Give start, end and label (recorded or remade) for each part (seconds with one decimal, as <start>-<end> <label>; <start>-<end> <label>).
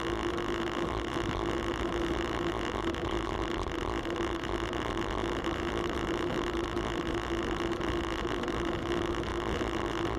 0.0-10.2 recorded